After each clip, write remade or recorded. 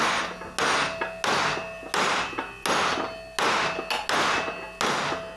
recorded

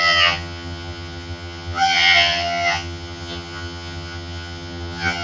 remade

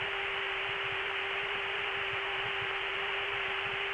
remade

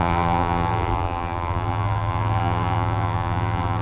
remade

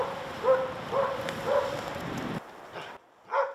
recorded